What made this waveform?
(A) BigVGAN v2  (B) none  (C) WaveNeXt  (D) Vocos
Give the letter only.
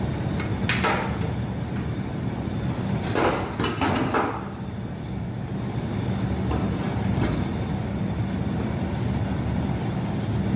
B